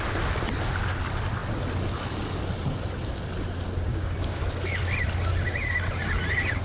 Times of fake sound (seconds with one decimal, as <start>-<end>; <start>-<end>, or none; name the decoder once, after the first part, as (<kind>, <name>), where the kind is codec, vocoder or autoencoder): 3.9-4.4 (codec, DAC)